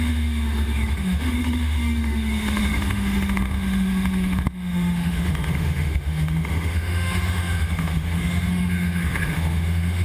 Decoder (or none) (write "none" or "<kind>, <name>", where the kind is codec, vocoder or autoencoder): autoencoder, DAC-VAE